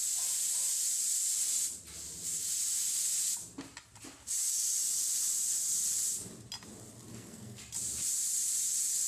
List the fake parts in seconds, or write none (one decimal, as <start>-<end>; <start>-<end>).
7.1-7.6